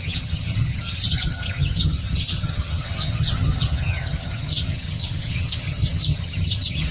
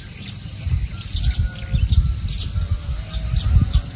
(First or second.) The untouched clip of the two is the second